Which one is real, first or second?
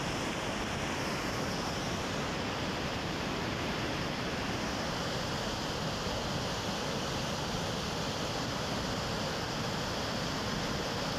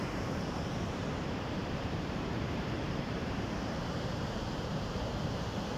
first